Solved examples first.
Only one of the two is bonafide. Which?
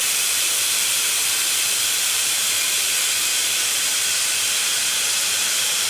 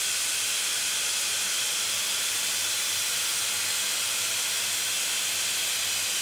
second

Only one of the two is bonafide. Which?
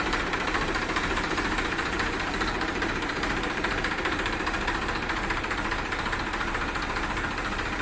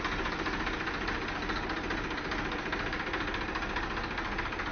second